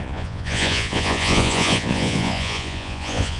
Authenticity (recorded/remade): remade